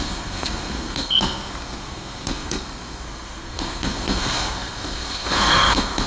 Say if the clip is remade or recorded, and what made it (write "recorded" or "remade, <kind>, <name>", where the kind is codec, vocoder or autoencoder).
remade, codec, SNAC